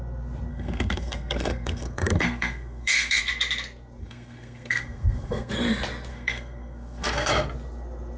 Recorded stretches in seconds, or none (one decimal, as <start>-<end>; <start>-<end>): 0.0-0.5; 3.2-4.0; 5.5-6.1; 7.3-8.2